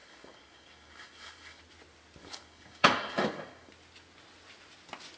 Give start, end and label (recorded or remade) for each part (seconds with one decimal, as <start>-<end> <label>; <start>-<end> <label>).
0.0-1.6 remade; 1.6-2.2 recorded; 2.2-3.7 remade; 3.7-5.2 recorded